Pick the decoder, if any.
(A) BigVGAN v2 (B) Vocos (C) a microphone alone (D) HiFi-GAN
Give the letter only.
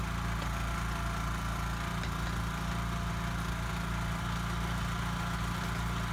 C